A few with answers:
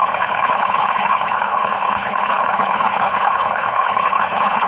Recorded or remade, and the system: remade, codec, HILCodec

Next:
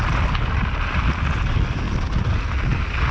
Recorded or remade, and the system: recorded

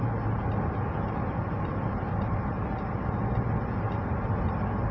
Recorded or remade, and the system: recorded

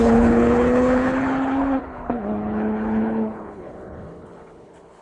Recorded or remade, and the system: remade, codec, HILCodec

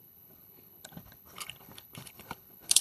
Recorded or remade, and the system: remade, codec, HILCodec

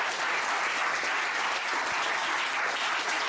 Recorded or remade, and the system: recorded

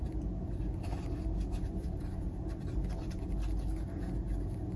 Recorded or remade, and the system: recorded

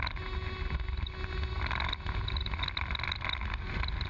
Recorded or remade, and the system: recorded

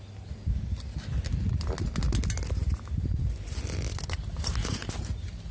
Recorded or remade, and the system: recorded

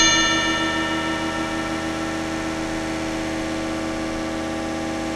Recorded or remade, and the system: recorded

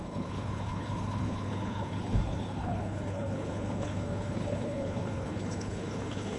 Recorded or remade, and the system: remade, codec, HILCodec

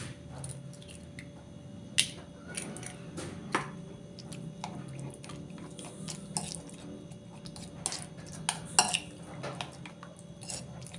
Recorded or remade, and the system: recorded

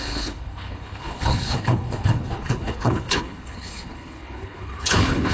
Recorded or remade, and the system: remade, codec, HILCodec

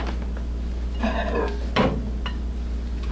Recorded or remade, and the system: recorded